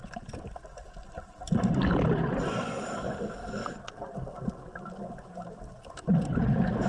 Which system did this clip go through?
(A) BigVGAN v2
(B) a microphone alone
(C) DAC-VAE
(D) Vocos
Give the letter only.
A